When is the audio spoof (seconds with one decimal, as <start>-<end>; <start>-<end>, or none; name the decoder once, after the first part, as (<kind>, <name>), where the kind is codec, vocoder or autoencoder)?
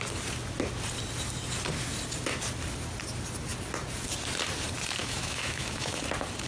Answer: 5.0-6.0 (autoencoder, DAC-VAE)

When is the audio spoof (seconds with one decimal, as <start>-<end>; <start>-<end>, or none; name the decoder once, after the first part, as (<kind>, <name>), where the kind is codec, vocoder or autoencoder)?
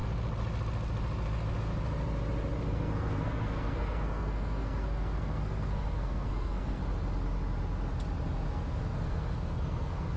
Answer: 2.7-6.8 (codec, SNAC); 8.5-10.2